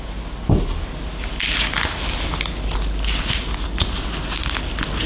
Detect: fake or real real